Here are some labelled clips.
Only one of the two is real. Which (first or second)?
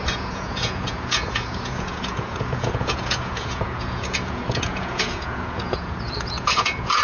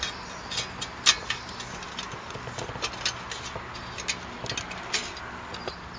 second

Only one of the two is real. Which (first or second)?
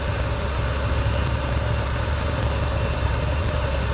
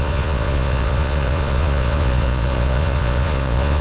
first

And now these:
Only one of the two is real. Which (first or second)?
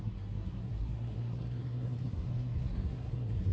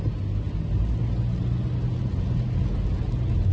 second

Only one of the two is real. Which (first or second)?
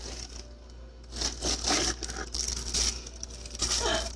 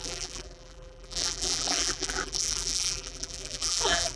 first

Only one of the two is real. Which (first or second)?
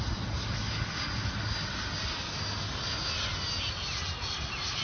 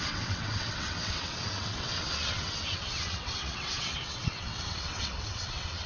first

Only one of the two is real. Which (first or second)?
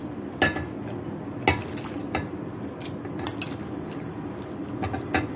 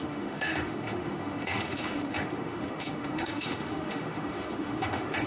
first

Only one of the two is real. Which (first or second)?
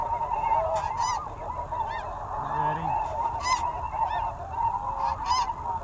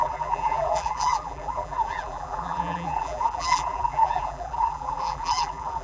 first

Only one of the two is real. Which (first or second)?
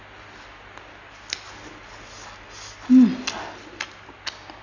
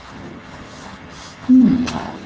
first